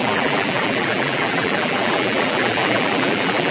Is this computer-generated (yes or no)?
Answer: yes